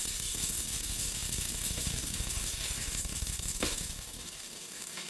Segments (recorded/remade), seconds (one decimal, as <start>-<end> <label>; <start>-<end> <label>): 0.0-5.1 remade